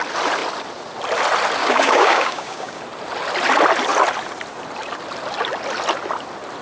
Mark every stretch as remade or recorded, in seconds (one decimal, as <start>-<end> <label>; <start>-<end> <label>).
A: 0.0-1.6 recorded; 1.6-2.8 remade; 2.8-6.6 recorded